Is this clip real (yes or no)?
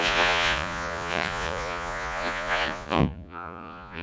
no